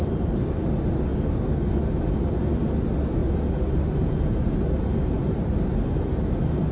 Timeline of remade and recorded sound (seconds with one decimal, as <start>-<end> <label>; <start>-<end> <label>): 0.0-6.7 recorded